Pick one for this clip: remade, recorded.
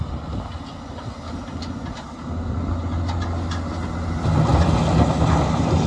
recorded